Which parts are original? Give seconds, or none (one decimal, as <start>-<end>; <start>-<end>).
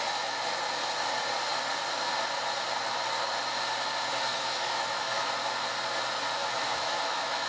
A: 0.0-4.3; 5.3-6.4